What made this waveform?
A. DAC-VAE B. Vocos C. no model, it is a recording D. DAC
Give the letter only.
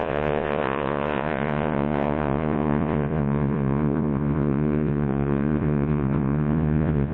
B